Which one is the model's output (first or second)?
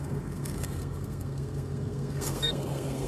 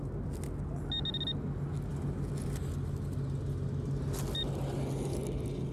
first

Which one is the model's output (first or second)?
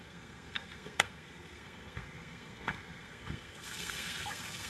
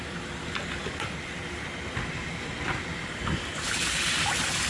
first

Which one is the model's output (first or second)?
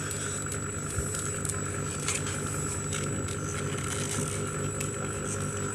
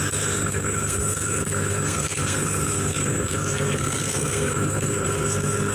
second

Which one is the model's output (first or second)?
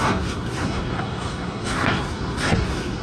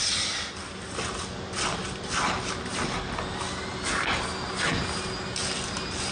first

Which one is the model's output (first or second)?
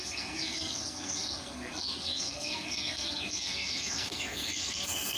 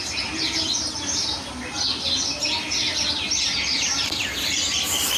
first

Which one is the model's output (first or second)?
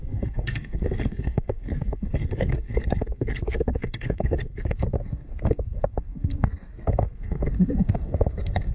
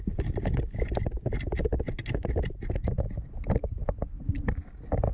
first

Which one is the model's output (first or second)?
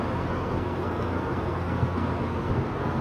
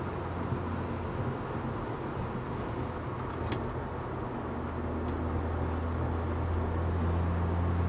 first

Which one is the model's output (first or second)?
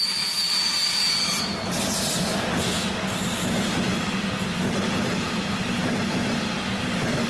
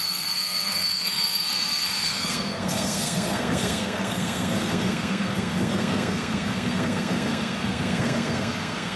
second